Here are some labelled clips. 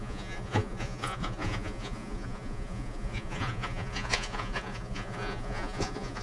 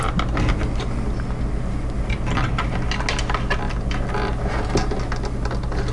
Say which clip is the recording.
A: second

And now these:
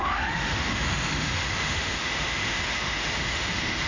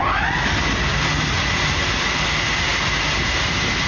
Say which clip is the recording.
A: second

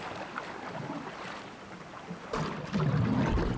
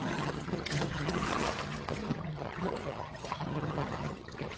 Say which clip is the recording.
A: first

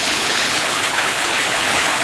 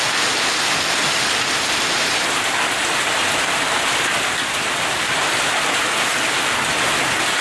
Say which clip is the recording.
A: second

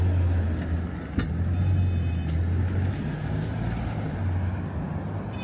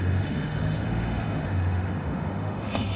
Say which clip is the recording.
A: first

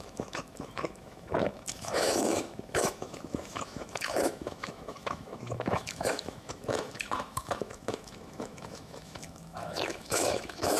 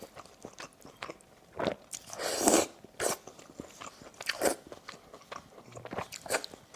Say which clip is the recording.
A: second